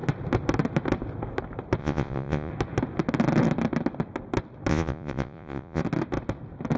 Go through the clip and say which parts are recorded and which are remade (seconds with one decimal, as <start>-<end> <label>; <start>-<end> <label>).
0.0-1.8 recorded; 1.8-2.5 remade; 2.5-4.7 recorded; 4.7-5.8 remade; 5.8-6.8 recorded